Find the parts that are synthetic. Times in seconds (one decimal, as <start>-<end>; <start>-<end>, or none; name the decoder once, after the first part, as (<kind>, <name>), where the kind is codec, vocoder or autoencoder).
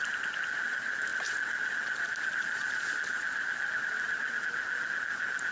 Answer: none